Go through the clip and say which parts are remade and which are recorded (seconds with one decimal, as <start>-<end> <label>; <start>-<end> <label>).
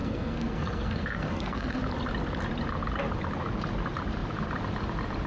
0.0-1.8 remade; 1.8-5.3 recorded